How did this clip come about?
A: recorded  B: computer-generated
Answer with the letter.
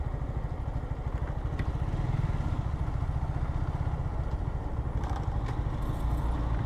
A